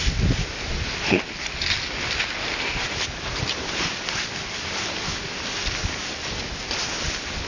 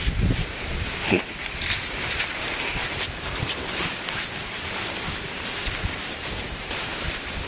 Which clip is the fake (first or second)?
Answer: second